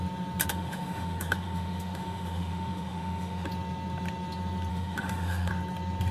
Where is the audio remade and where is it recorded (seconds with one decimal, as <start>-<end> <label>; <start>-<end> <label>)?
0.0-0.5 recorded; 0.5-3.5 remade; 3.5-4.7 recorded; 4.7-5.5 remade; 5.5-6.1 recorded